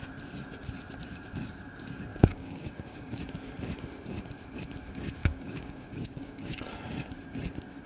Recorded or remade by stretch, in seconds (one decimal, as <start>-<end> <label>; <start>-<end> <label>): 0.0-2.1 recorded; 2.1-3.2 remade; 3.2-5.2 recorded; 5.2-6.6 remade; 6.6-7.9 recorded